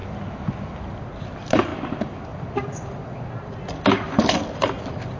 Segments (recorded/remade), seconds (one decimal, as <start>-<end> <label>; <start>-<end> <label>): 0.0-5.2 recorded

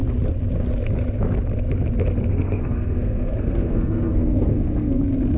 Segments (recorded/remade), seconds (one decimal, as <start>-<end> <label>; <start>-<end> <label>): 0.0-2.3 recorded; 2.3-5.0 remade; 5.0-5.4 recorded

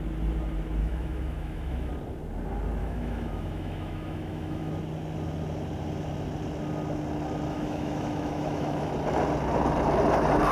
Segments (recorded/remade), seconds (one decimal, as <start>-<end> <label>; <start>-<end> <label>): 0.0-0.8 recorded; 0.8-1.9 remade; 1.9-2.8 recorded; 2.8-4.7 remade; 4.7-7.5 recorded; 7.5-8.9 remade; 8.9-10.5 recorded

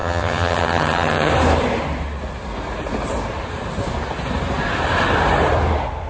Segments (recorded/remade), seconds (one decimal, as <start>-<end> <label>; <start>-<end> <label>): 0.0-1.3 remade; 1.3-6.1 recorded

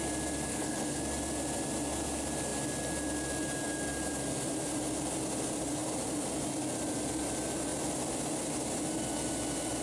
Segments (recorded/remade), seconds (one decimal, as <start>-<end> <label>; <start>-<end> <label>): 0.0-0.5 recorded; 0.5-1.0 remade; 1.0-9.8 recorded

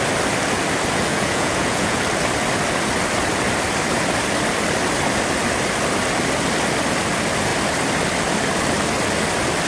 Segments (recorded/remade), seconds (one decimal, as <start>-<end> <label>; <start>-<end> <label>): 0.0-1.1 recorded; 1.1-2.0 remade; 2.0-9.7 recorded

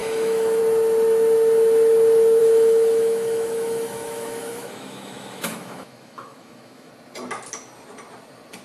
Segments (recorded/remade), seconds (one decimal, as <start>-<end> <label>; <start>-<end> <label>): 0.0-0.6 remade; 0.6-2.4 recorded; 2.4-6.9 remade; 6.9-8.6 recorded